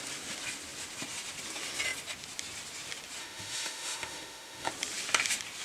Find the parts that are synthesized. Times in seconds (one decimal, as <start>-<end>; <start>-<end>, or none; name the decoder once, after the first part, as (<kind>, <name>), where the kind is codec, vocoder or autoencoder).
3.2-4.7 (autoencoder, DAC-VAE)